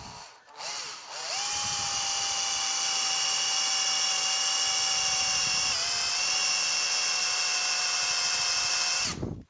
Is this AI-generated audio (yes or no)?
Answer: no